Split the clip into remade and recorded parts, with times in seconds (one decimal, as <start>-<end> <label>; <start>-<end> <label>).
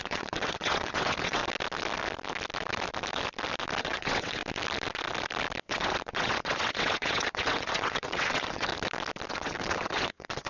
0.0-1.4 remade; 1.4-3.8 recorded; 3.8-4.4 remade; 4.4-5.6 recorded; 5.6-8.7 remade; 8.7-9.3 recorded; 9.3-10.5 remade